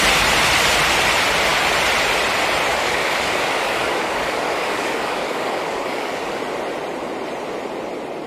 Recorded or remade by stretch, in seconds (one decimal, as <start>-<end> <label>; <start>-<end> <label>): 0.0-2.7 recorded; 2.7-6.4 remade; 6.4-8.3 recorded